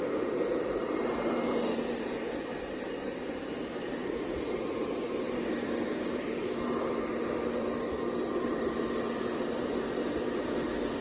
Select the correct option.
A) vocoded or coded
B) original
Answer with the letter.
A